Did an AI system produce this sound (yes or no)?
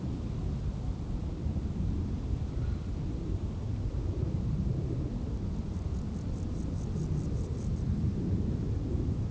yes